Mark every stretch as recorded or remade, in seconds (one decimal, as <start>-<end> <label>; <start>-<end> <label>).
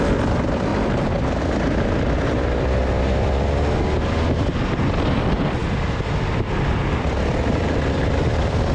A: 0.0-2.8 remade; 2.8-4.9 recorded; 4.9-5.6 remade; 5.6-6.9 recorded; 6.9-8.7 remade